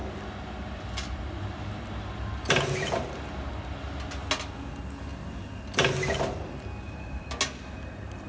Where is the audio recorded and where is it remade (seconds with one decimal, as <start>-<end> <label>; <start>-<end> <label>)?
0.0-8.3 recorded